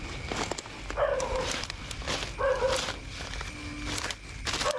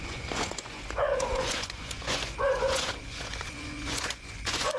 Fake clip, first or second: second